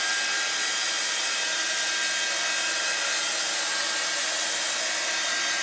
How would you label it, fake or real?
real